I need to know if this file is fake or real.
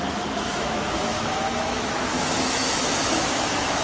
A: fake